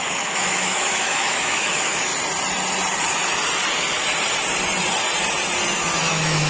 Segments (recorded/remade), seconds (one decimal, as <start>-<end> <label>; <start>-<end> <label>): 0.0-2.1 remade; 2.1-6.0 recorded; 6.0-6.5 remade